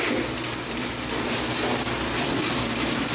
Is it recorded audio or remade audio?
recorded